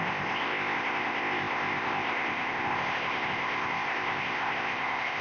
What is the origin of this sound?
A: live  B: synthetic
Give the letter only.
B